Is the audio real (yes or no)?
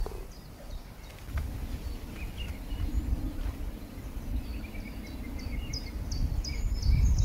yes